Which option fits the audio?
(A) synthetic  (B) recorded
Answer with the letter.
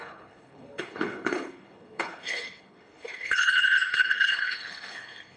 A